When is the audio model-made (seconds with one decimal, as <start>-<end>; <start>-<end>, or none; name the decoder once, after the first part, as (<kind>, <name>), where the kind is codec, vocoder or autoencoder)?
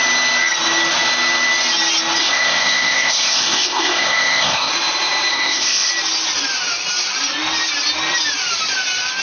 2.2-4.7 (codec, ZipCodec); 5.3-5.9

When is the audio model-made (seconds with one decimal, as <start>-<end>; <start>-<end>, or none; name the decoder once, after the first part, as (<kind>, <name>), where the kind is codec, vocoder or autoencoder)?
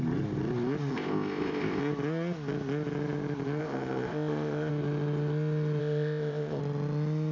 0.9-1.8 (codec, ZipCodec); 3.6-4.7; 5.8-6.6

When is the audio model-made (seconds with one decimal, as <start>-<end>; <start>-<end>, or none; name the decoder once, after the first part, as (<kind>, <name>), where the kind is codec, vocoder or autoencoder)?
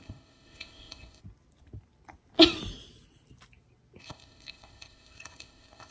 0.0-1.2 (codec, ZipCodec); 4.0-5.9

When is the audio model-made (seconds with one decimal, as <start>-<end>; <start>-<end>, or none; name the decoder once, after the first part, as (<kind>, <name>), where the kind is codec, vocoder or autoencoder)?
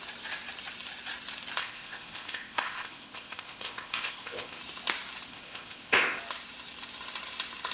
1.6-4.6 (codec, ZipCodec); 5.3-6.2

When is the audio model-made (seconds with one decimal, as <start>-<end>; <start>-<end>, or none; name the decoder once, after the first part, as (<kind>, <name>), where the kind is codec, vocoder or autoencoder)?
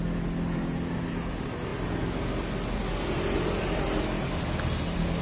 none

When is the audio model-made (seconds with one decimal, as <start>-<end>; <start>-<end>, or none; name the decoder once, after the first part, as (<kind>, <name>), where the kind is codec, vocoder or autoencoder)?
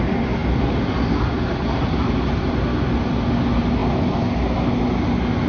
none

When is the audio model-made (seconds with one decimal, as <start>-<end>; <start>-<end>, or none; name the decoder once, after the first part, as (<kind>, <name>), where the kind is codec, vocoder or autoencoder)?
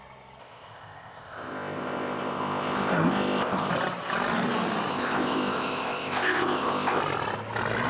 0.4-3.7 (codec, ZipCodec); 4.9-7.0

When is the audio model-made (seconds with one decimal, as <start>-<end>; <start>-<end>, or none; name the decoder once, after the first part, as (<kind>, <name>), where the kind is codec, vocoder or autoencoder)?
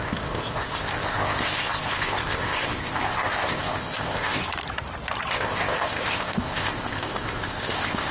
0.0-4.4 (codec, ZipCodec); 5.3-8.1